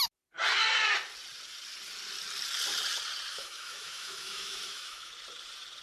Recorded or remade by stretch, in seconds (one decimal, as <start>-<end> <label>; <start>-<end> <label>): 0.0-3.3 recorded; 3.3-5.1 remade; 5.1-5.8 recorded

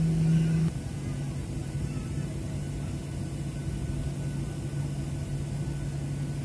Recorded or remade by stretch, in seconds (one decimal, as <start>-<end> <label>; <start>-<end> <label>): 0.0-1.6 recorded; 1.6-2.7 remade; 2.7-6.4 recorded

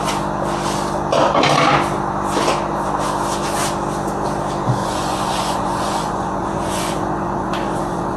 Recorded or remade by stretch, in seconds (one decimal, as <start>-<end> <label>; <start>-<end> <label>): 0.0-4.8 recorded; 4.8-8.2 remade

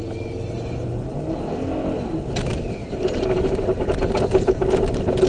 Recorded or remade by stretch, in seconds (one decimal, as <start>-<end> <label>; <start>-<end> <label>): 0.0-2.8 recorded; 2.8-4.7 remade; 4.7-5.3 recorded

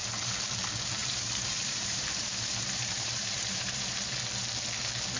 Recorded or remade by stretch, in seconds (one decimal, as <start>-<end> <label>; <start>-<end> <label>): 0.0-1.0 recorded; 1.0-4.1 remade; 4.1-5.2 recorded

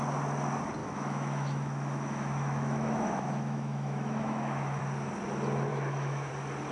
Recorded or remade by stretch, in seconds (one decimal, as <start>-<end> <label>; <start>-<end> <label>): 0.0-0.8 recorded; 0.8-4.8 remade; 4.8-5.7 recorded; 5.7-6.3 remade; 6.3-6.7 recorded

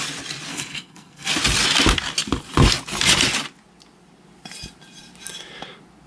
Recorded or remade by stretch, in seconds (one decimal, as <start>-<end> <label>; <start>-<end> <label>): 0.0-0.5 recorded; 0.5-1.3 remade; 1.3-6.1 recorded

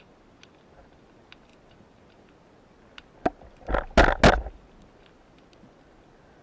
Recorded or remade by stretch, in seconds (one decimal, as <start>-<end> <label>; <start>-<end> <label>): 0.0-6.4 recorded